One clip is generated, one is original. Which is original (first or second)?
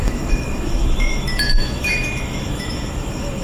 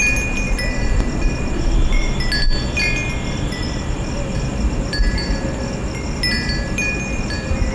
second